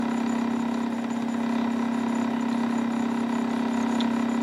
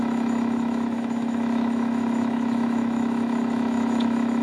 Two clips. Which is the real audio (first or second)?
first